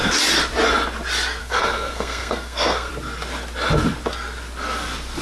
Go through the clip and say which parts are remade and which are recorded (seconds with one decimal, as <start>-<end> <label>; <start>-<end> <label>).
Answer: 0.0-1.4 recorded; 1.4-2.9 remade; 2.9-5.2 recorded